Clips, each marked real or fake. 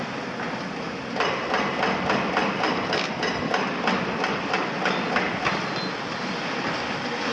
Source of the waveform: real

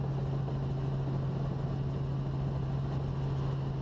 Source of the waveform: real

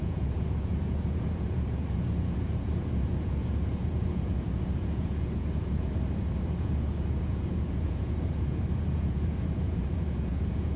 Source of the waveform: fake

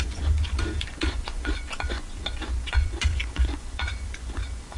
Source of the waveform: fake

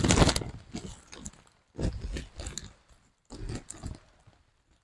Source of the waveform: real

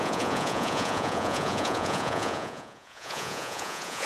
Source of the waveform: fake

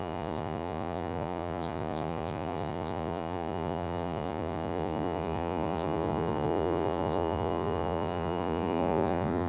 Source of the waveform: fake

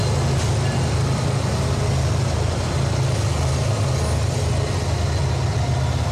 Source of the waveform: real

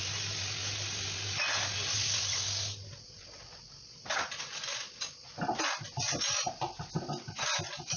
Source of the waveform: real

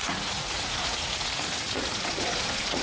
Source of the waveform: fake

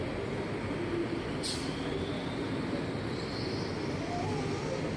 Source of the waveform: real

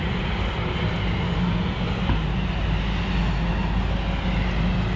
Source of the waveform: real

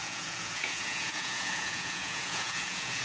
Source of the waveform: fake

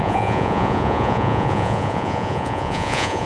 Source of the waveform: fake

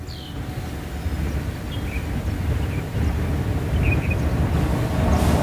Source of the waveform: real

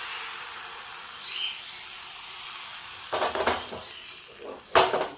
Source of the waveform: real